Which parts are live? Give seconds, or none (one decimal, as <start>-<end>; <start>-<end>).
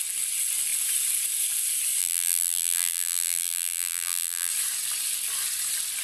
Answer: 0.0-2.0; 4.5-6.0